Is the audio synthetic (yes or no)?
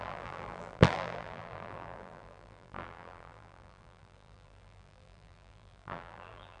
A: yes